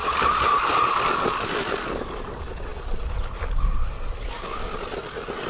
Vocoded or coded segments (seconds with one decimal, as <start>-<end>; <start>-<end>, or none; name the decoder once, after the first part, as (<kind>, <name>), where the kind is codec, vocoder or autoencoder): none